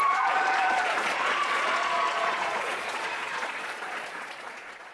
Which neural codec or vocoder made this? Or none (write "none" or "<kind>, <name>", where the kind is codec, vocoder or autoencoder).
vocoder, Vocos